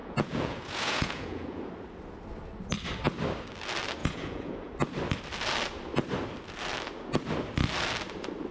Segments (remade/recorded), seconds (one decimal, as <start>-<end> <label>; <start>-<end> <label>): 0.0-1.7 remade; 1.7-4.0 recorded; 4.0-4.7 remade; 4.7-8.5 recorded